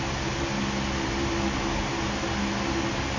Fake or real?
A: real